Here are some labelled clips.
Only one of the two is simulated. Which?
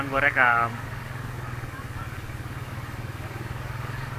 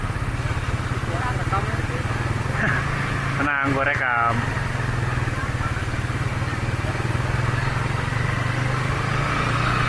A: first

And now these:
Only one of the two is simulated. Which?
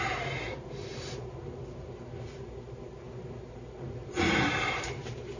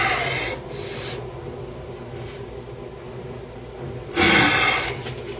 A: first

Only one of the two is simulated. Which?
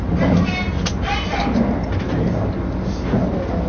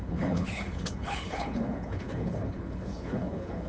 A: second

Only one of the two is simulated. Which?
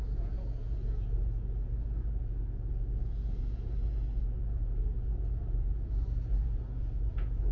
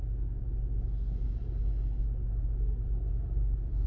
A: first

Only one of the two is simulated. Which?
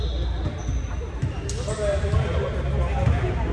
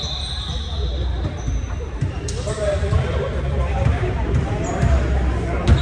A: second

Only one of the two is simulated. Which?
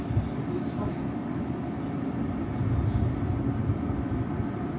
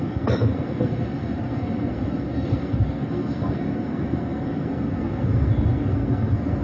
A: second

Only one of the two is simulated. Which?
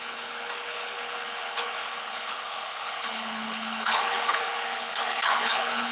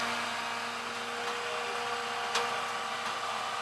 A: first